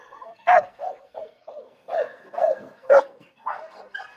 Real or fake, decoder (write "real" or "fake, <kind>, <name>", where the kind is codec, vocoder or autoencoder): fake, codec, SNAC